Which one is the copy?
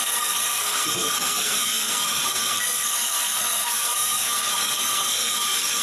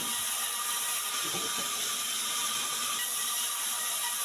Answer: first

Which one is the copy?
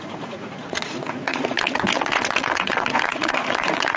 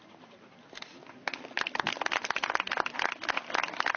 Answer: first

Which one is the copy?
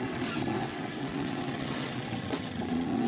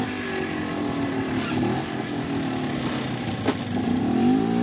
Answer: first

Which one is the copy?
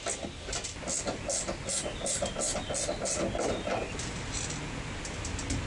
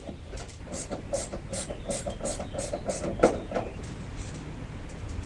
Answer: second